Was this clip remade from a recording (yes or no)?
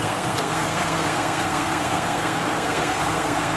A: yes